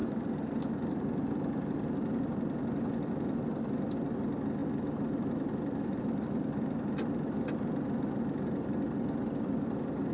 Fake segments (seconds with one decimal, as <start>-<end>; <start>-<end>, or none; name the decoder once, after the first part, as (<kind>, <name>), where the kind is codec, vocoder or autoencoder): none